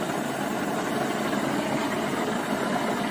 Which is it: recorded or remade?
recorded